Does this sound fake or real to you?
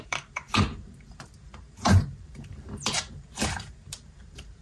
fake